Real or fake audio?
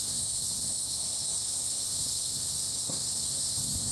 fake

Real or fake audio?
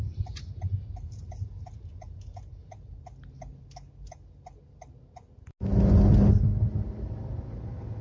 real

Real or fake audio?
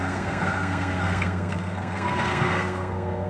fake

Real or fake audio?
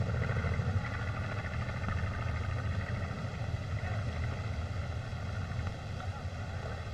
real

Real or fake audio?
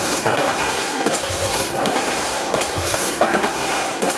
fake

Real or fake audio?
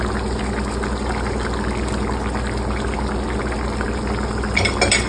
real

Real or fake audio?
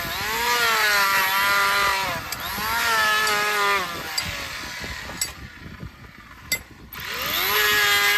real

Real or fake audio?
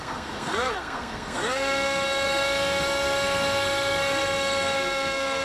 fake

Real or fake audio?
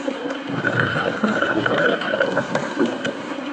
fake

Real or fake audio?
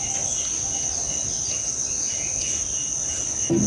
real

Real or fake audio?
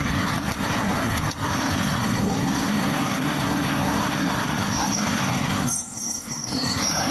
fake